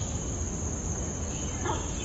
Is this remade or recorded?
recorded